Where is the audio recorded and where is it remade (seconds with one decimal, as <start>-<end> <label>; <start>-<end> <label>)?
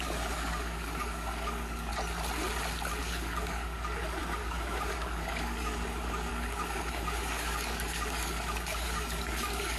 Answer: 0.0-1.9 remade; 1.9-3.0 recorded; 3.0-9.8 remade